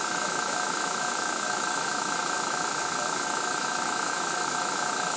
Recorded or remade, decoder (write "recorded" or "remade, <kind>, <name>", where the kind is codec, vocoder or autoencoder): remade, autoencoder, DAC-VAE